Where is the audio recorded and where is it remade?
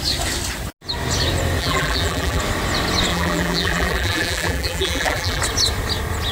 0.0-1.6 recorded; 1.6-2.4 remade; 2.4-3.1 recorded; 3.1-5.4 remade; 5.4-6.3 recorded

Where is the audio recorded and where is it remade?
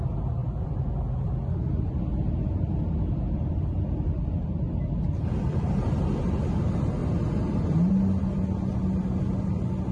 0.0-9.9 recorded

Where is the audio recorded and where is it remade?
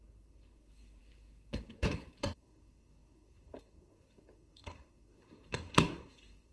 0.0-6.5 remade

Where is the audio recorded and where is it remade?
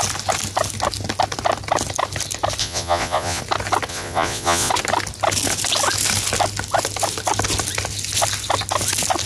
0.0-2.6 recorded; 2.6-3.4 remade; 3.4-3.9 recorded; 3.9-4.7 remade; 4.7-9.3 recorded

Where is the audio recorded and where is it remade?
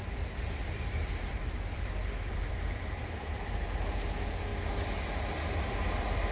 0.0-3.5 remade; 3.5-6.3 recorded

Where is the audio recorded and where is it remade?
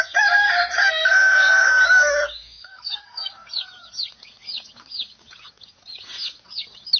0.0-0.8 recorded; 0.8-1.7 remade; 1.7-2.7 recorded; 2.7-3.3 remade; 3.3-7.0 recorded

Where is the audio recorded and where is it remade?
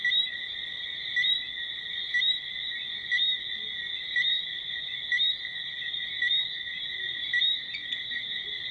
0.0-8.7 recorded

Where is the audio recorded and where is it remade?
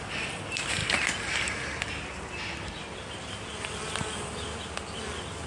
0.0-5.5 recorded